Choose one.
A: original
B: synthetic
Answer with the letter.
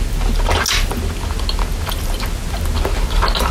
A